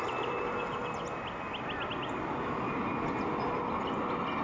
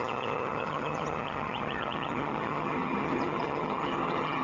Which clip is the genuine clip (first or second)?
first